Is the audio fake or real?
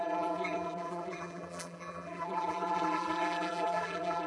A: fake